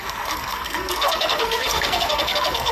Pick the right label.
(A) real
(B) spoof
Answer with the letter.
B